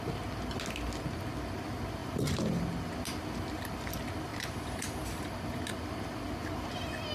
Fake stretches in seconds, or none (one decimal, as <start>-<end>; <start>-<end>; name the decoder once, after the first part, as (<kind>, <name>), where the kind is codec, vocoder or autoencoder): 4.3-5.6 (vocoder, BigVGAN v2)